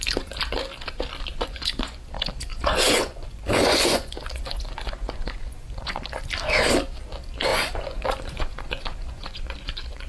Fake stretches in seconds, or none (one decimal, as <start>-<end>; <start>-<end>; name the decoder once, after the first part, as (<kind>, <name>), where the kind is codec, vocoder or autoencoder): 1.3-2.1 (vocoder, Vocos); 2.5-6.2; 7.5-10.1